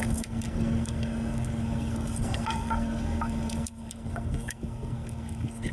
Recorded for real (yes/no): no